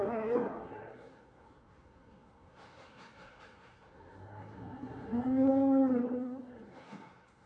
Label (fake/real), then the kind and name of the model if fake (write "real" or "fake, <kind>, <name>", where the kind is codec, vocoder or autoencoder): fake, codec, SNAC